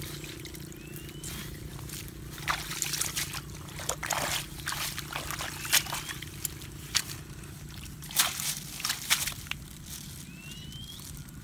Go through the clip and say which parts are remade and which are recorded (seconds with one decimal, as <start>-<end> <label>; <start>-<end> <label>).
0.0-11.4 recorded